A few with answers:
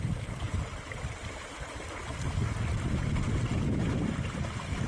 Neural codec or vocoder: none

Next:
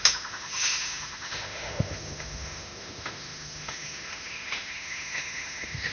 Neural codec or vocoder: autoencoder, DAC-VAE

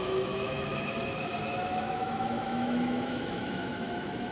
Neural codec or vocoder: autoencoder, DAC-VAE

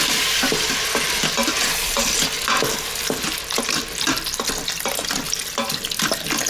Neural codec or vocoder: none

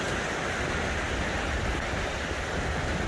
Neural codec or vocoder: none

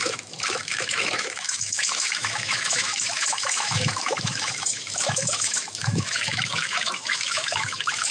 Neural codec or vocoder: autoencoder, DAC-VAE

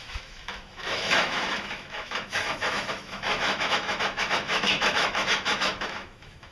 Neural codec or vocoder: autoencoder, DAC-VAE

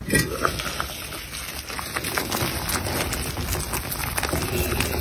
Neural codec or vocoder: none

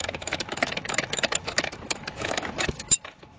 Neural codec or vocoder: autoencoder, DAC-VAE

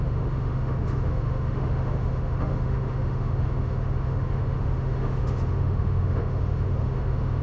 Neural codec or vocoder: autoencoder, DAC-VAE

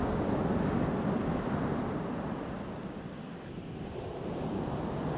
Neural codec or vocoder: none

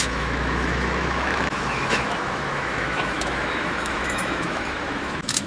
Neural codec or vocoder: autoencoder, DAC-VAE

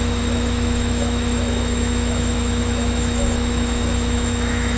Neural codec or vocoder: autoencoder, DAC-VAE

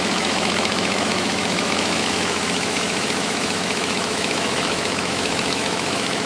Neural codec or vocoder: autoencoder, DAC-VAE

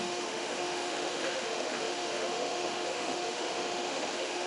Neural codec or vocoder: autoencoder, DAC-VAE